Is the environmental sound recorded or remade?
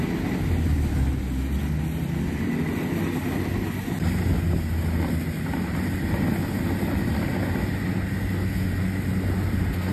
recorded